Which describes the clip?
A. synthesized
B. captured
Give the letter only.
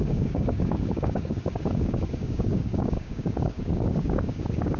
A